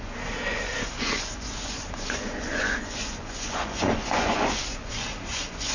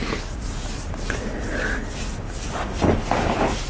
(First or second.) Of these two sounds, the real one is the second